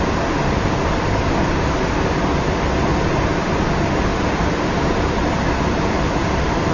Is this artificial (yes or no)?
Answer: no